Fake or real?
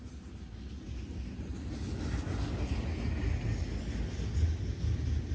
real